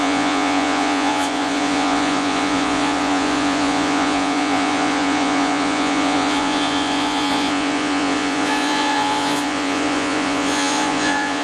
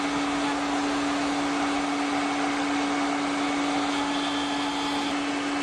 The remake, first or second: first